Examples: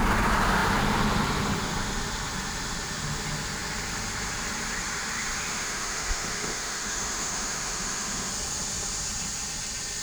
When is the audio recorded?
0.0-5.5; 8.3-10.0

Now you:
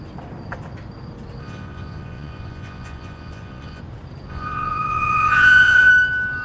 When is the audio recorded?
0.0-1.4; 3.8-4.3; 5.9-6.4

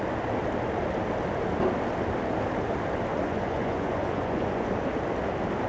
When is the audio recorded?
0.0-3.1; 4.7-5.7

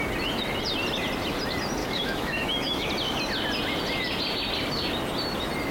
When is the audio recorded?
0.0-1.8; 2.9-5.7